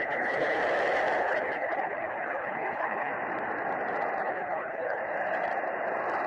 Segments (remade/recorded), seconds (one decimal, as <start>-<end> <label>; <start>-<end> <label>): 0.0-0.6 remade; 0.6-1.2 recorded; 1.2-3.1 remade; 3.1-4.2 recorded; 4.2-5.0 remade; 5.0-6.3 recorded